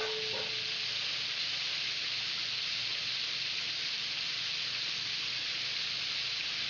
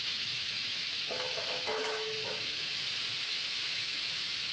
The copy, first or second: second